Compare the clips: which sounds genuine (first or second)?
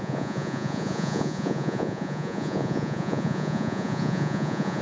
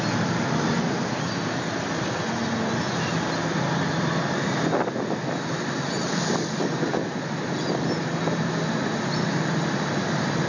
second